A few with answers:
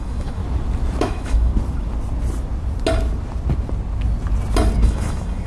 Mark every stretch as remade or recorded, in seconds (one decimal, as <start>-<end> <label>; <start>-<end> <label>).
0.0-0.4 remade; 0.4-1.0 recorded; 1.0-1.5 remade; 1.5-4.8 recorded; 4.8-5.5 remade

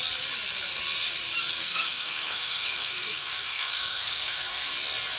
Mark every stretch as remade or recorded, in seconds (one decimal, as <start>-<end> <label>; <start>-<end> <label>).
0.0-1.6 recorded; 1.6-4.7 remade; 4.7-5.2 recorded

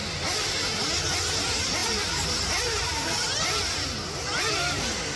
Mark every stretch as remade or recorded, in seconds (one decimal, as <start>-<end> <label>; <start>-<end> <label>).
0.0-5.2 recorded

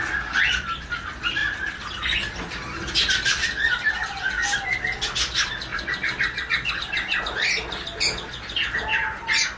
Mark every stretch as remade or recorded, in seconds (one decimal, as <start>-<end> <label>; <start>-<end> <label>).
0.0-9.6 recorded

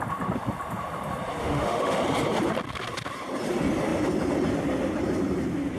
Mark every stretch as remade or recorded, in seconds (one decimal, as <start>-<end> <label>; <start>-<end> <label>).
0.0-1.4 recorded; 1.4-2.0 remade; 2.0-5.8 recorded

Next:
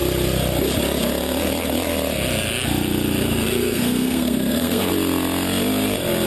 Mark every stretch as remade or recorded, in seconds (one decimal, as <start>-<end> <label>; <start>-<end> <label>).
0.0-3.2 recorded; 3.2-4.9 remade; 4.9-6.3 recorded

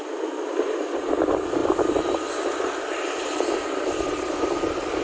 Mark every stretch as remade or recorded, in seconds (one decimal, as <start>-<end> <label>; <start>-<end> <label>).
0.0-1.6 recorded; 1.6-4.6 remade; 4.6-5.0 recorded